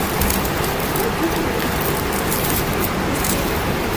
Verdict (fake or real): real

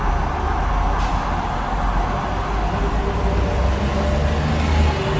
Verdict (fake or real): real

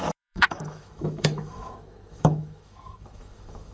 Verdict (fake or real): fake